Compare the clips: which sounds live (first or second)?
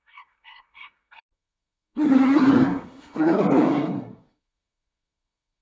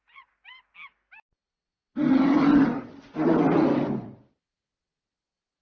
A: second